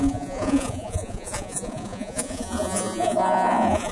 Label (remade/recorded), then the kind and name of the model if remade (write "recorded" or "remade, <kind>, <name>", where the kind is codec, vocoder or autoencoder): remade, vocoder, Vocos